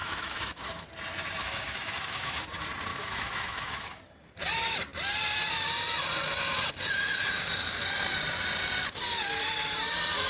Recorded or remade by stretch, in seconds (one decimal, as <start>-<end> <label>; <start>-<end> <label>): 0.0-0.9 remade; 0.9-1.4 recorded; 1.4-2.4 remade; 2.4-2.9 recorded; 2.9-4.0 remade; 4.0-10.3 recorded